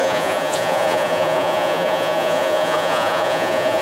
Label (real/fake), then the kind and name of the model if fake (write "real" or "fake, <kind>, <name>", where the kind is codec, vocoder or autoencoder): fake, vocoder, Vocos